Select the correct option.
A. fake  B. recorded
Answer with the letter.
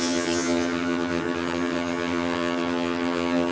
A